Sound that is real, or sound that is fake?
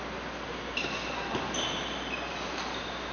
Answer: real